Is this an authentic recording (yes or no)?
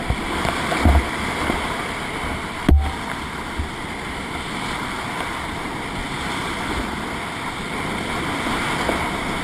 yes